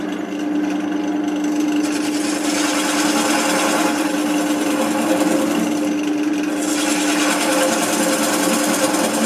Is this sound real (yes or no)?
yes